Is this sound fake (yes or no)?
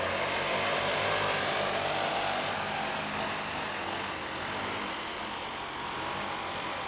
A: no